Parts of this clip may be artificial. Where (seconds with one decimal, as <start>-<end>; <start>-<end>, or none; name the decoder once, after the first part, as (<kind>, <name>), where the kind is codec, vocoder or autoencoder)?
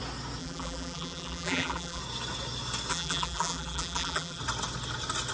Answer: 0.4-2.0 (vocoder, BigVGAN v2); 2.9-4.4